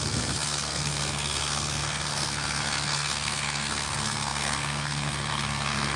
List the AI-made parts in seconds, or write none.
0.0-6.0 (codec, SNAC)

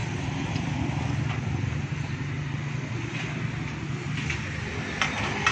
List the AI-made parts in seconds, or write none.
none

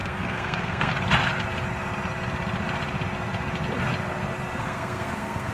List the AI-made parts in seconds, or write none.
0.0-0.9 (codec, SNAC); 4.6-5.5

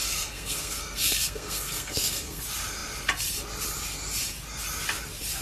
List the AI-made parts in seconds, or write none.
0.0-2.4 (codec, SNAC)